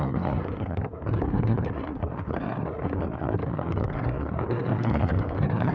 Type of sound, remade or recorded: remade